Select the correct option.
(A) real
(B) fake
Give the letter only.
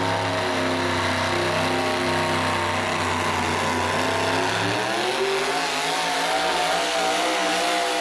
A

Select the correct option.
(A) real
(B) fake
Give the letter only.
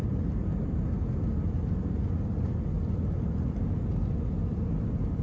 A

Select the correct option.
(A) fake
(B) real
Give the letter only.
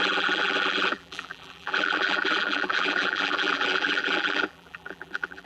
A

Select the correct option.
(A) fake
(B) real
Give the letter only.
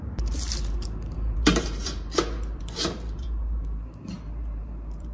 A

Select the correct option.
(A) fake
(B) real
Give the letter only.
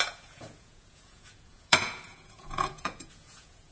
A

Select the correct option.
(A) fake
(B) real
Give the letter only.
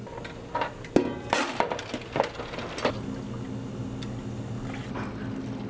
B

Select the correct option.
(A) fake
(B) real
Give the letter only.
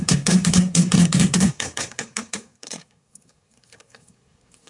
A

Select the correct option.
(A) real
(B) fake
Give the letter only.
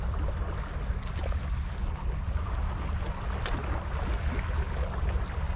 A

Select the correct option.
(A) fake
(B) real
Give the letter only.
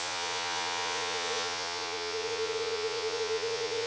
A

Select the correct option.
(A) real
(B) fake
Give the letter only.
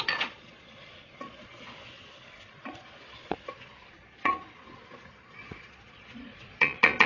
B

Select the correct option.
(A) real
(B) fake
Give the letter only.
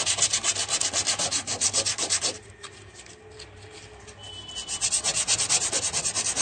A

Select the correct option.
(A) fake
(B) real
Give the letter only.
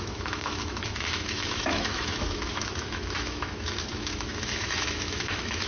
A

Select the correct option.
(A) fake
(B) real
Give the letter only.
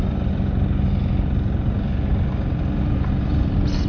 B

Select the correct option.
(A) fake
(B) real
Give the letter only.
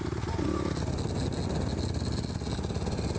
B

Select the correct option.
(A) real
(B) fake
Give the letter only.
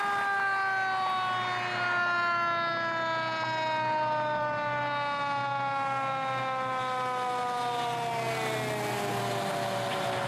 A